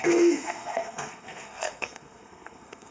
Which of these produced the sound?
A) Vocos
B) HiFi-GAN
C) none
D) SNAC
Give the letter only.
D